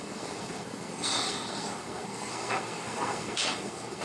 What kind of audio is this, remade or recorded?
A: remade